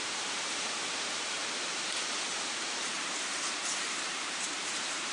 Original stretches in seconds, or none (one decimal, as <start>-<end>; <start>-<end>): none